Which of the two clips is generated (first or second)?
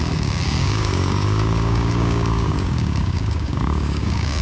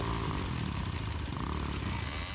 first